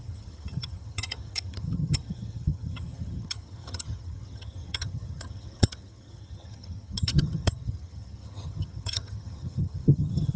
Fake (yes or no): yes